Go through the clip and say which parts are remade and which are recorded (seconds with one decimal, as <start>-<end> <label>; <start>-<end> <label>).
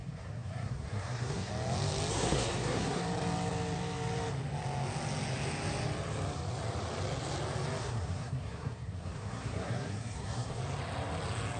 0.0-1.5 remade; 1.5-2.1 recorded; 2.1-3.0 remade; 3.0-7.8 recorded; 7.8-10.6 remade; 10.6-11.6 recorded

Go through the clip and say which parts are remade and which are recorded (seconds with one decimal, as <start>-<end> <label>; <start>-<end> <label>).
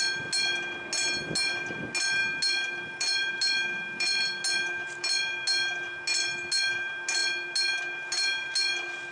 0.0-9.1 recorded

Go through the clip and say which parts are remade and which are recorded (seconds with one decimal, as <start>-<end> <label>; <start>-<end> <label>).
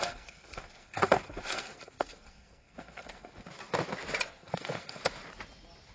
0.0-3.5 remade; 3.5-4.3 recorded; 4.3-5.0 remade; 5.0-5.9 recorded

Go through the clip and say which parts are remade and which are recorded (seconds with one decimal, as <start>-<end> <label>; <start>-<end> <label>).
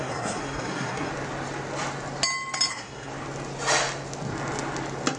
0.0-1.1 remade; 1.1-2.7 recorded; 2.7-3.1 remade; 3.1-5.2 recorded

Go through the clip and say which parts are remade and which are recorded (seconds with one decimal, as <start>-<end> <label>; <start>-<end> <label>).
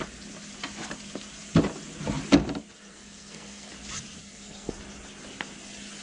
0.0-2.9 recorded; 2.9-3.7 remade; 3.7-4.2 recorded; 4.2-4.7 remade; 4.7-6.0 recorded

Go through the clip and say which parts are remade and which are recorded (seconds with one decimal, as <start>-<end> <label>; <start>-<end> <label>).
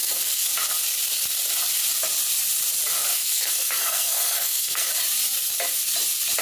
0.0-0.5 remade; 0.5-3.1 recorded; 3.1-4.9 remade; 4.9-6.4 recorded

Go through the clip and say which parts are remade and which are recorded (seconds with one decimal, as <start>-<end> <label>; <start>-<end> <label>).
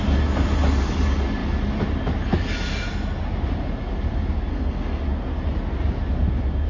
0.0-4.5 recorded; 4.5-5.0 remade; 5.0-6.7 recorded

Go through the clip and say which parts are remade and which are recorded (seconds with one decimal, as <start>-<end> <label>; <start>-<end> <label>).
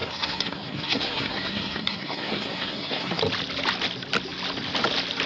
0.0-3.2 remade; 3.2-5.3 recorded